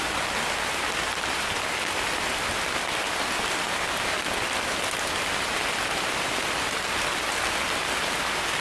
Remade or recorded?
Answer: recorded